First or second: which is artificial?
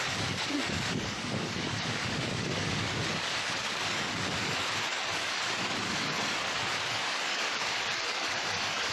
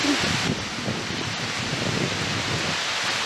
first